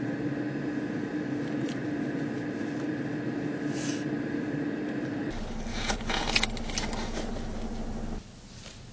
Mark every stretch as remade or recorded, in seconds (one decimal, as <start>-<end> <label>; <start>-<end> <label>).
0.0-5.7 recorded; 5.7-6.5 remade; 6.5-8.9 recorded

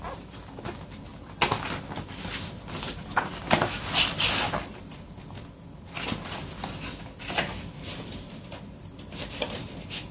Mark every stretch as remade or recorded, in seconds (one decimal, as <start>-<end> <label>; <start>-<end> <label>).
0.0-10.1 recorded

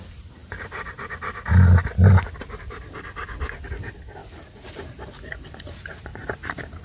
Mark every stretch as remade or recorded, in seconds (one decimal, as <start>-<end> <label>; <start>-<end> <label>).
0.0-6.8 recorded

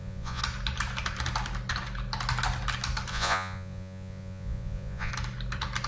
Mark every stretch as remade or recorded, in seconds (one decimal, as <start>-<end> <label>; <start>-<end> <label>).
0.0-0.4 remade; 0.4-3.1 recorded; 3.1-5.1 remade; 5.1-5.9 recorded